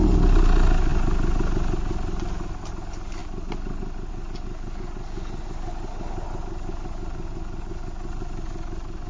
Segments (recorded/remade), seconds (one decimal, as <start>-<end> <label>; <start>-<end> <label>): 0.0-9.1 recorded